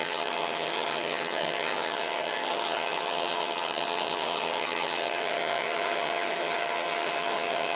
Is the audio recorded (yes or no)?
no